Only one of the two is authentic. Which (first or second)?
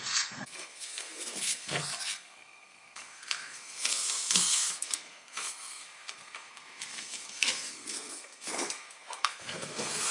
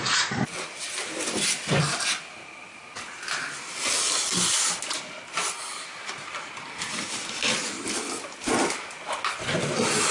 second